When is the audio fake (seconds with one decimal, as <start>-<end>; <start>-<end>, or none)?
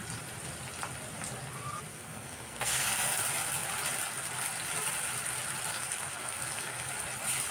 1.9-3.2; 5.7-6.9